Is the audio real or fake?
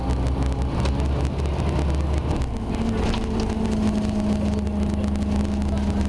real